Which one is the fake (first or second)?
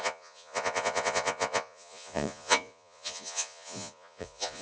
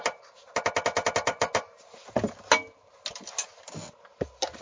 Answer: first